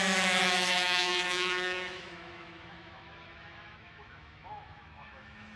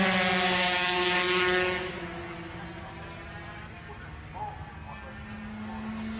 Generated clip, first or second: first